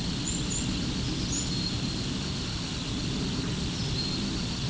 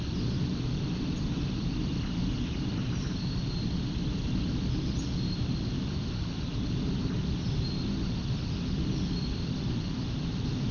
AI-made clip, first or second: second